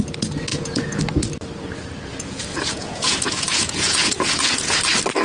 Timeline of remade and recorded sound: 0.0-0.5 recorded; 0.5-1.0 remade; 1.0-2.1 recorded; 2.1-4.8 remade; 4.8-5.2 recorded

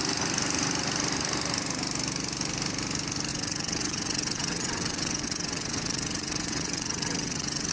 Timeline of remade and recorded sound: 0.0-3.3 recorded; 3.3-7.7 remade

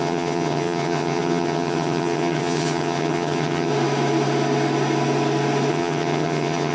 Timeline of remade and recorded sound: 0.0-3.7 remade; 3.7-5.7 recorded; 5.7-6.7 remade

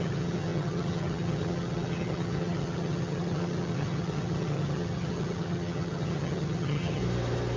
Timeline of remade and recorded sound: 0.0-7.0 remade; 7.0-7.6 recorded

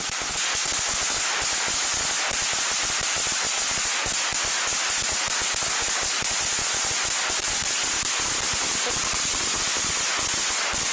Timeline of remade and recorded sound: 0.0-10.9 recorded

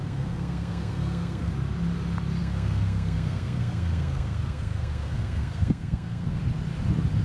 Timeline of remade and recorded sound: 0.0-1.5 remade; 1.5-2.4 recorded; 2.4-6.4 remade; 6.4-7.2 recorded

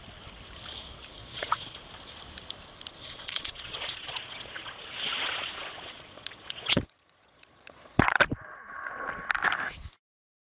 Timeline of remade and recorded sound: 0.0-1.2 recorded; 1.2-1.8 remade; 1.8-3.0 recorded; 3.0-8.2 remade; 8.2-10.4 recorded

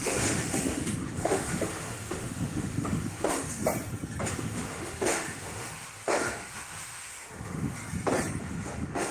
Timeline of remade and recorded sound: 0.0-3.6 remade; 3.6-4.3 recorded; 4.3-7.8 remade; 7.8-8.4 recorded; 8.4-9.1 remade